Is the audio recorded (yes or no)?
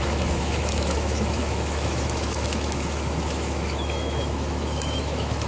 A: no